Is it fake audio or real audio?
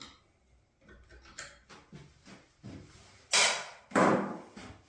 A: real